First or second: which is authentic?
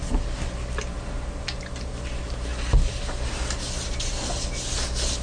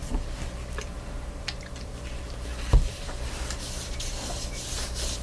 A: first